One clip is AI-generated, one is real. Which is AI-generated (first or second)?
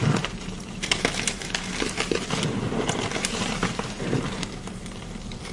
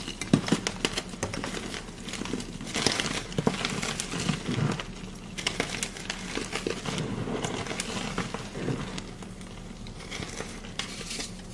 first